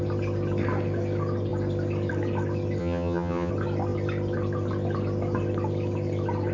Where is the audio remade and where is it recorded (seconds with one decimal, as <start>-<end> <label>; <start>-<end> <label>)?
0.0-2.8 recorded; 2.8-3.5 remade; 3.5-6.5 recorded